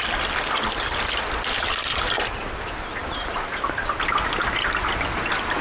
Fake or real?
real